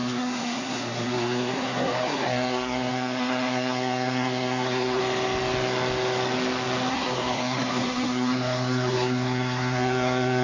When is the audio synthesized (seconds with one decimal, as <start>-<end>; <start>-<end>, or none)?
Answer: 0.0-5.0; 6.9-10.4